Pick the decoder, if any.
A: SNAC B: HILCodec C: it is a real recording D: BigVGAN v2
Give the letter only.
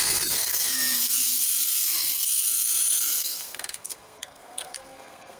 A